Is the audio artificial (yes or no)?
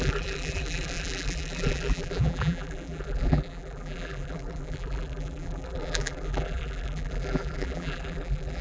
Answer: yes